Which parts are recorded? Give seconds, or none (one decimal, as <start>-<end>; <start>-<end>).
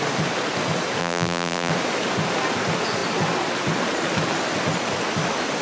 0.0-1.0; 1.7-5.6